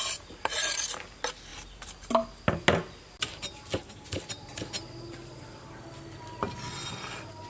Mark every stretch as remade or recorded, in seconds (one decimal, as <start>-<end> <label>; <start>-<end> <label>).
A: 0.0-7.5 recorded